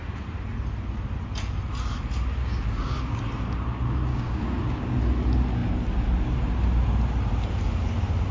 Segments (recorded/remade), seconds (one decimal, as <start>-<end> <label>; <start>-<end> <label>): 0.0-2.4 recorded; 2.4-3.2 remade; 3.2-4.1 recorded; 4.1-5.0 remade; 5.0-8.3 recorded